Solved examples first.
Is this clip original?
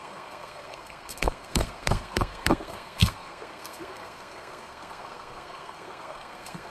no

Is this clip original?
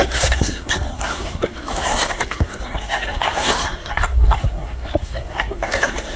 no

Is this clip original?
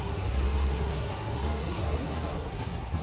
no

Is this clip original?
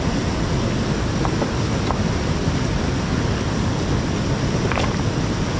yes